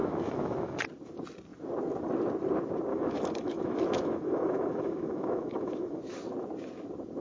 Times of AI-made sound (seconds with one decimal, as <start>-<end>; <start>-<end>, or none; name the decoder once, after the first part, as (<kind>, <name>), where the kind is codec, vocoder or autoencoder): 0.0-0.8 (autoencoder, DAC-VAE); 2.9-6.0